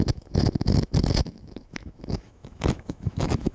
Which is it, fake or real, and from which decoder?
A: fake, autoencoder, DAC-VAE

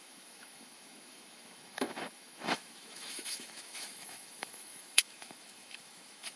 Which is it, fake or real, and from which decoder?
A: fake, autoencoder, DAC-VAE